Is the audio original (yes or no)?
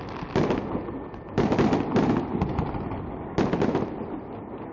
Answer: yes